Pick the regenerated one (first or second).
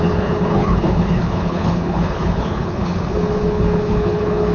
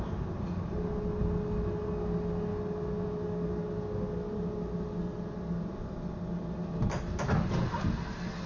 first